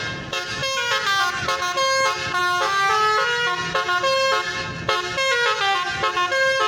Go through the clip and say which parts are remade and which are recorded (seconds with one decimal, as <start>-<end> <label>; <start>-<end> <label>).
0.0-6.7 recorded

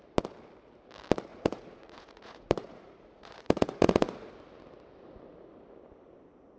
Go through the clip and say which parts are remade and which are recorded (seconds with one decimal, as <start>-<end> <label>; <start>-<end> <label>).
0.0-1.3 recorded; 1.3-4.3 remade; 4.3-6.6 recorded

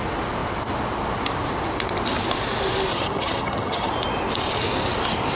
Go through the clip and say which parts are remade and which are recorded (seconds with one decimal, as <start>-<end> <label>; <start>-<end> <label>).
0.0-2.9 recorded; 2.9-3.9 remade; 3.9-5.4 recorded

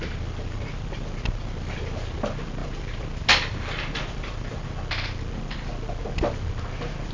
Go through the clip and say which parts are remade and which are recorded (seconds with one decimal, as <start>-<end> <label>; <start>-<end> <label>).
0.0-7.1 recorded

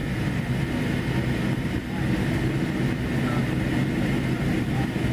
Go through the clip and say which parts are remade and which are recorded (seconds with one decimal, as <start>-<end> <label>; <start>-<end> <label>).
0.0-5.1 recorded

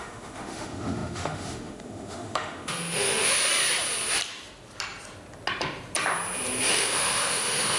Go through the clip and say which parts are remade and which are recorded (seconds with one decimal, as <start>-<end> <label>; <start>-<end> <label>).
0.0-3.4 remade; 3.4-6.7 recorded; 6.7-7.8 remade

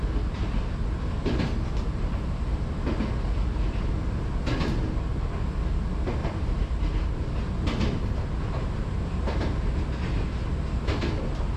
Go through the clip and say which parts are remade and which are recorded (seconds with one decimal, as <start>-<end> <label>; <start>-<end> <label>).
0.0-6.2 recorded; 6.2-6.8 remade; 6.8-11.6 recorded